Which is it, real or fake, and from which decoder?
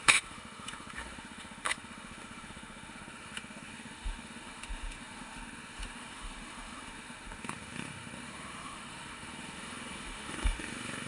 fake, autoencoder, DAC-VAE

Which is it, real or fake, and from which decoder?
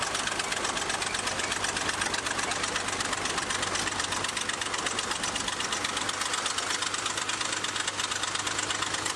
real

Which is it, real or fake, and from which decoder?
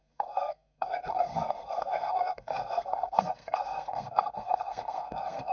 fake, codec, SNAC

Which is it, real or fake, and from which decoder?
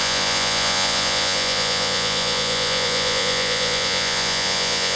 fake, vocoder, Vocos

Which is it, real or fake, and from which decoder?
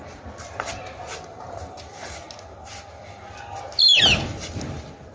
real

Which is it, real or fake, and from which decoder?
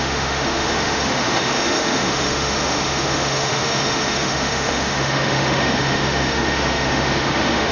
fake, autoencoder, DAC-VAE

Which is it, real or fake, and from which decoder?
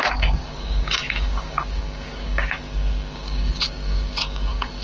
fake, codec, DAC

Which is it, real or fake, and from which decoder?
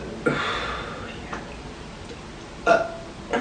real